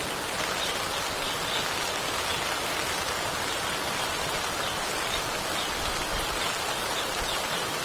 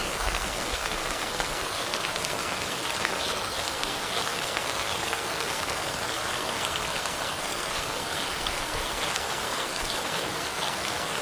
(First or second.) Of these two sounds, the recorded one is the first